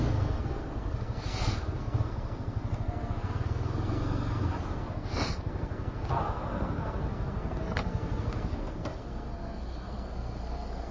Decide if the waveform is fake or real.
fake